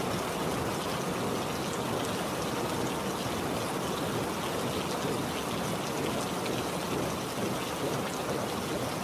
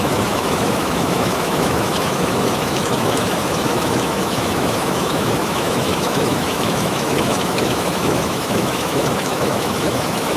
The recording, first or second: first